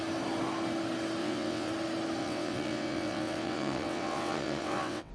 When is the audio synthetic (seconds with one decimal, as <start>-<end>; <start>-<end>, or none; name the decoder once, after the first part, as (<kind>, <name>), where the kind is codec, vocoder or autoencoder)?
1.2-1.7 (vocoder, WaveNeXt); 2.2-5.1